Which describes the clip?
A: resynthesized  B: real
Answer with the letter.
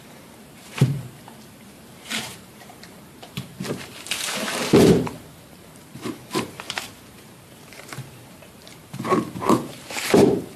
A